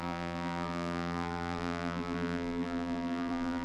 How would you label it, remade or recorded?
remade